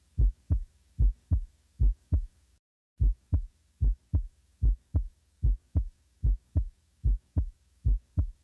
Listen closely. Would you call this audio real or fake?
fake